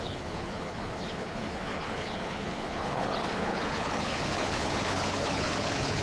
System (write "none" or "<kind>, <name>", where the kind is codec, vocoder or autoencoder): codec, HILCodec